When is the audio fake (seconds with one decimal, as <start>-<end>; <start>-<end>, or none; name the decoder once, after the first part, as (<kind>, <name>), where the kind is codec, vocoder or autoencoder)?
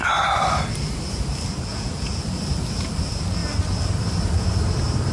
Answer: 1.7-2.3 (vocoder, Vocos)